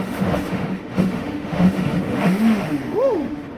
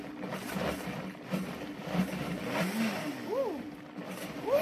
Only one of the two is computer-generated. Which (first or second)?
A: first